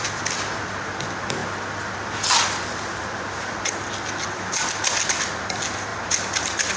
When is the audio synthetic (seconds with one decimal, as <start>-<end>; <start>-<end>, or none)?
none